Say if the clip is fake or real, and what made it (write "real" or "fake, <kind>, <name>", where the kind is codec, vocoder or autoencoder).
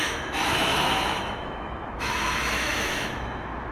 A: fake, autoencoder, DAC-VAE